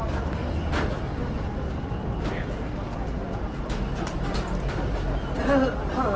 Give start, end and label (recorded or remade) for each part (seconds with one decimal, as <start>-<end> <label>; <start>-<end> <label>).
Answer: 0.0-6.2 recorded